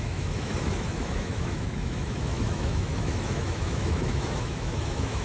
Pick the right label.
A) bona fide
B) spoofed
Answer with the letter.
B